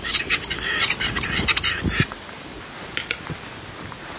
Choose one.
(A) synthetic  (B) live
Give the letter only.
A